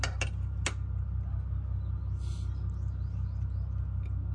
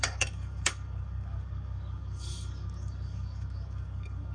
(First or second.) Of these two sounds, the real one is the first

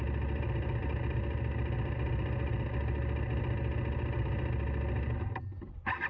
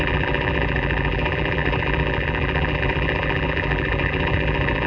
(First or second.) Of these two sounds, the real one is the first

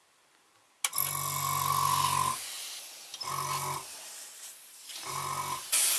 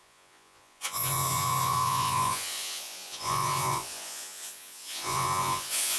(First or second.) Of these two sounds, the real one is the first